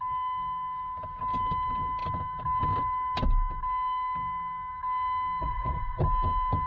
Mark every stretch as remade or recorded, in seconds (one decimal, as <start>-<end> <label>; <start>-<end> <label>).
0.0-5.4 recorded; 5.4-6.0 remade; 6.0-6.7 recorded